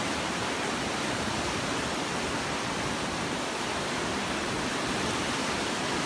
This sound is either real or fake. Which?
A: real